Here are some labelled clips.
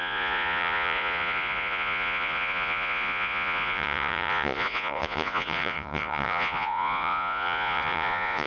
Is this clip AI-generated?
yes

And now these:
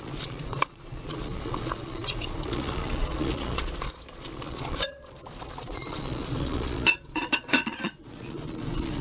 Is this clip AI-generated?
yes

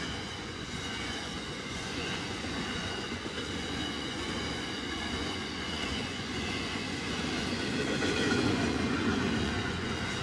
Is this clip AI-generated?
yes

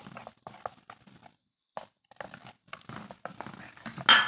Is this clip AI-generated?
no